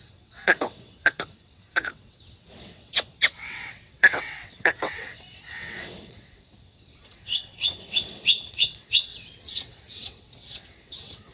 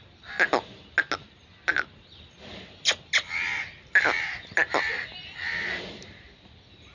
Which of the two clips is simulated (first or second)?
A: first